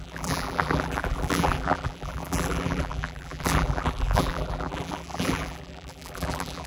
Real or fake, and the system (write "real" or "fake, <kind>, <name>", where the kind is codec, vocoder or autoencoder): fake, vocoder, BigVGAN v2